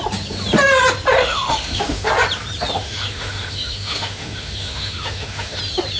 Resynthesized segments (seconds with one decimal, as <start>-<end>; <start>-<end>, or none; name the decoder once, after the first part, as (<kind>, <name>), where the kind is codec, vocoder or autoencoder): 1.2-2.1 (autoencoder, DAC-VAE); 2.7-5.6